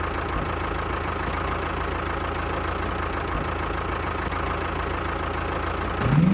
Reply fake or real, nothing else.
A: real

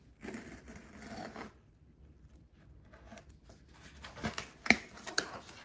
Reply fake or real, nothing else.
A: real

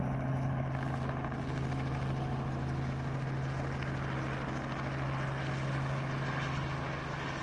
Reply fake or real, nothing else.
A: real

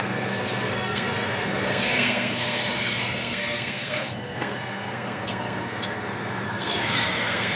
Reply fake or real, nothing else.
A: fake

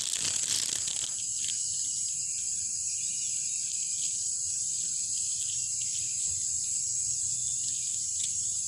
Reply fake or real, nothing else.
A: real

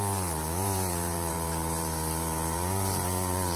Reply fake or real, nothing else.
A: fake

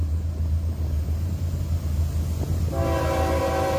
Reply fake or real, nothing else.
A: real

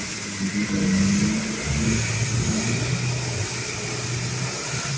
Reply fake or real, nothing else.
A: real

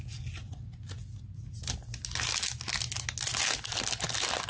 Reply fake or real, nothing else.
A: real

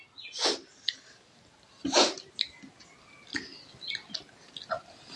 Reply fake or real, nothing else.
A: real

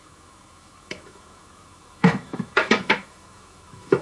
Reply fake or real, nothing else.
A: fake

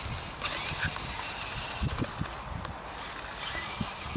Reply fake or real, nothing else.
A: real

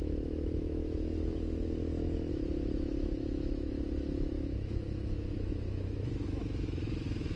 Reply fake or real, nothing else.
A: fake